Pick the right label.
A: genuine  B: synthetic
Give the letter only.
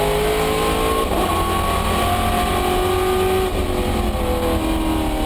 A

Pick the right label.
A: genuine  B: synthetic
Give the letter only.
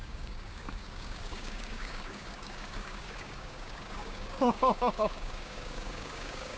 B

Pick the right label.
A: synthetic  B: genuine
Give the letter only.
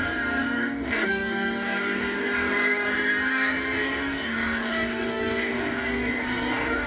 A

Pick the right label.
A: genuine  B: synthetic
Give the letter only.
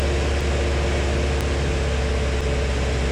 A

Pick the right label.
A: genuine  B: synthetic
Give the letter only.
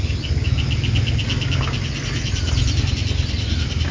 A